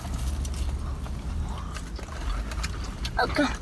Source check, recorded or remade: recorded